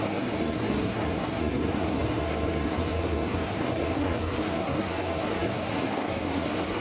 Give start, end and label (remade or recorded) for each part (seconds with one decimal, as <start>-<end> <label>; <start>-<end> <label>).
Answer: 0.0-6.8 remade